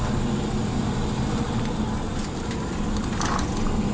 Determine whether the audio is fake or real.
real